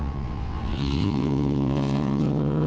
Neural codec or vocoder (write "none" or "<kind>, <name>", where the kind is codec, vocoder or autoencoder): vocoder, WaveNeXt